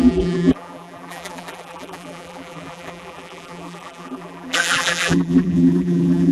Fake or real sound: fake